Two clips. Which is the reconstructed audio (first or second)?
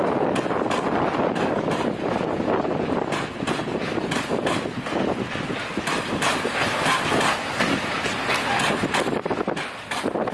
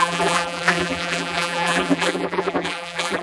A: second